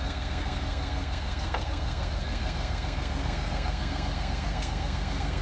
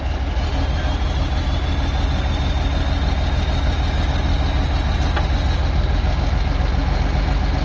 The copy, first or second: first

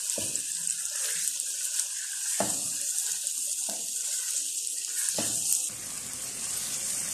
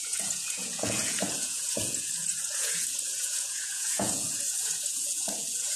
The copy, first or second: second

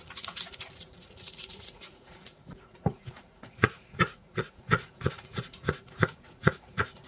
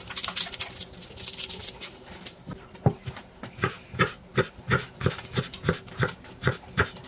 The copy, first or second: first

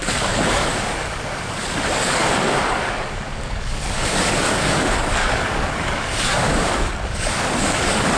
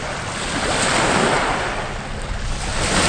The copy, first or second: first